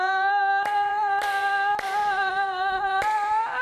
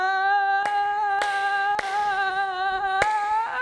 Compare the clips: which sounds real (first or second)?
second